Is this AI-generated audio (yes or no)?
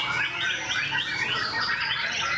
no